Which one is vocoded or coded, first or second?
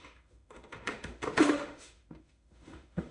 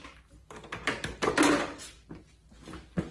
first